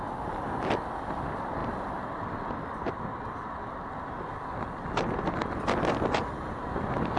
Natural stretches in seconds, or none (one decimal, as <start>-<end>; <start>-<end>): 0.0-7.2